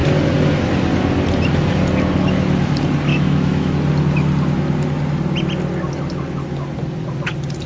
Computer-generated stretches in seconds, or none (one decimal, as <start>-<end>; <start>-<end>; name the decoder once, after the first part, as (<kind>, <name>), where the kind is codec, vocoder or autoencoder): 3.1-3.7 (autoencoder, DAC-VAE)